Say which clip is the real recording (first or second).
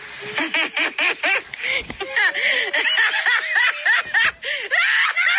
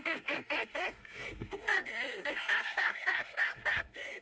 first